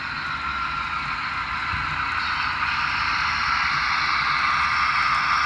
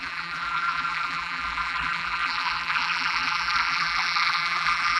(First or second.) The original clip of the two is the first